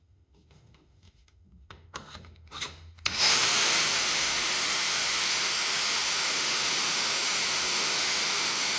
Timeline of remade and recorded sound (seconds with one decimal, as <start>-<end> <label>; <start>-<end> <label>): 0.0-8.8 remade